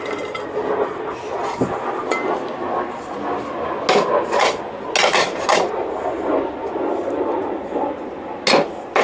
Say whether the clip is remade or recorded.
recorded